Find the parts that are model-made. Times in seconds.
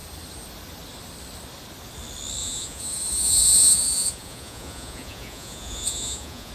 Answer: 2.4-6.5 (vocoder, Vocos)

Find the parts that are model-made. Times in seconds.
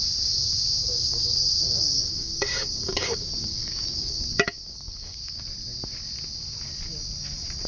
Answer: 0.8-5.4 (codec, DAC)